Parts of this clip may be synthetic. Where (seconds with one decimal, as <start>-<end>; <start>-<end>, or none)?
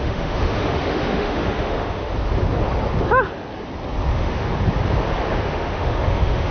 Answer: 0.0-2.1; 4.1-4.5; 5.4-6.5